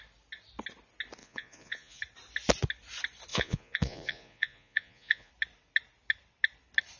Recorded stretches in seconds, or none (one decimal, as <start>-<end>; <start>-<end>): 0.0-1.2; 2.0-3.3; 5.3-7.0